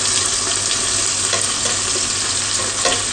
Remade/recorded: recorded